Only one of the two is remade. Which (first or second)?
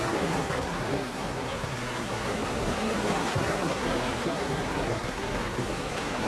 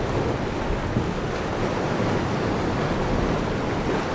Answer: first